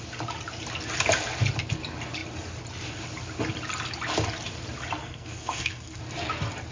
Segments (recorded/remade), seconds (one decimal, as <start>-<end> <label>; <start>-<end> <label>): 0.0-5.0 recorded; 5.0-6.0 remade; 6.0-6.7 recorded